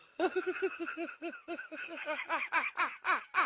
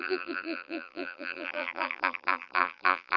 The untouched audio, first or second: first